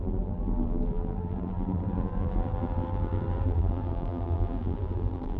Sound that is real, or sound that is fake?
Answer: fake